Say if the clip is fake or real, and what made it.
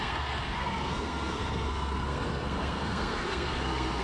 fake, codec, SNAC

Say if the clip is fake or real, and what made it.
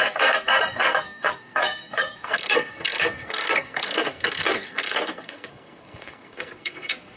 fake, codec, SNAC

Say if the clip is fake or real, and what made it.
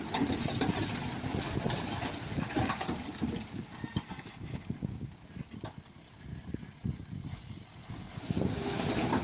real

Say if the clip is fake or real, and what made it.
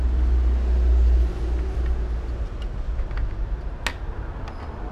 real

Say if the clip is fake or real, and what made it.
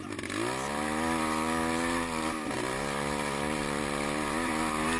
real